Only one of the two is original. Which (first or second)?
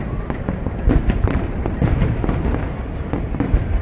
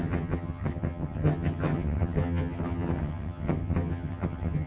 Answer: first